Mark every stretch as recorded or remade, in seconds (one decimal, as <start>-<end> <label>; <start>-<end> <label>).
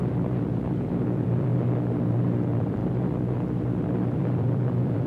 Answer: 0.0-1.5 remade; 1.5-2.2 recorded; 2.2-2.8 remade; 2.8-3.8 recorded; 3.8-5.1 remade